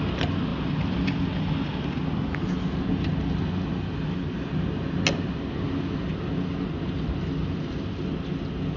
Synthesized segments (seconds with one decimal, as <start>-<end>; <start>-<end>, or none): none

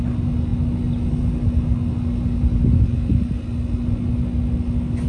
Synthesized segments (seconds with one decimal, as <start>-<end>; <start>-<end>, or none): none

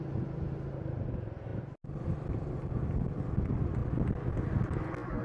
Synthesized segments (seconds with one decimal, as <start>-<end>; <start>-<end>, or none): none

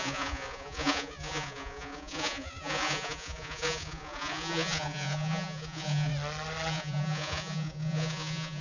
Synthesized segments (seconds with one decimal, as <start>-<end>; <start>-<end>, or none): 0.0-6.1; 6.7-8.6

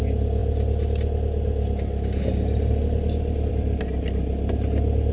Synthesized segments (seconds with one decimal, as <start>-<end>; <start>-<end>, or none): none

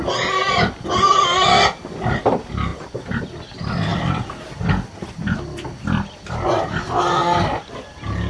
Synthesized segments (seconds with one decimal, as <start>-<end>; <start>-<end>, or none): none